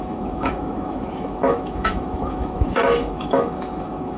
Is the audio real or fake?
fake